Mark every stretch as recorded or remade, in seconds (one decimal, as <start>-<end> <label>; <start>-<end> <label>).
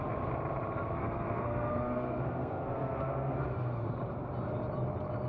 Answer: 0.0-1.0 recorded; 1.0-3.9 remade; 3.9-5.3 recorded